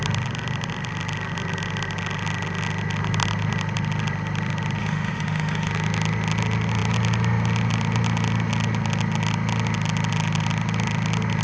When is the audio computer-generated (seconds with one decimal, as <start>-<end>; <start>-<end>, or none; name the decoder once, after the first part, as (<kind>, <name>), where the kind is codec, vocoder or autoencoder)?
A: 4.8-5.7 (autoencoder, DAC-VAE)